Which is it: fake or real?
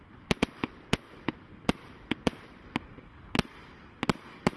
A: real